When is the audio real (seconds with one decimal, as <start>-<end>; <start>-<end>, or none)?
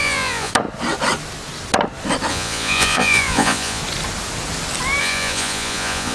0.5-2.3; 3.8-5.0